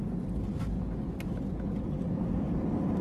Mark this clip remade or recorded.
recorded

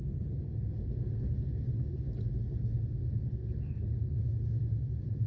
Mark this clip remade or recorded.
recorded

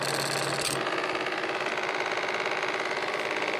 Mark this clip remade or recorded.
recorded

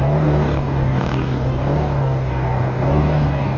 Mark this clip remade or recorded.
remade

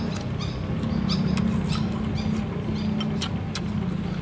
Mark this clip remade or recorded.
recorded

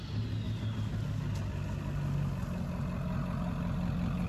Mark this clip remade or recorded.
recorded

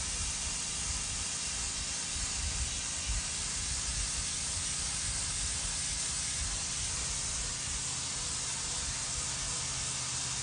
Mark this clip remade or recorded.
recorded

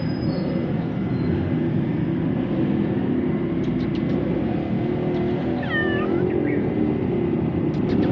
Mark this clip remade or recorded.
recorded